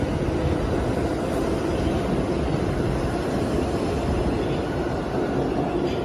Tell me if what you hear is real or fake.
real